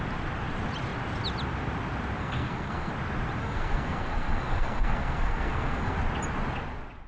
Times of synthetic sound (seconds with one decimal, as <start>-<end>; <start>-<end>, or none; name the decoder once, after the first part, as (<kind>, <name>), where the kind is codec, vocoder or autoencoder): 2.2-2.9 (codec, SNAC); 3.4-6.0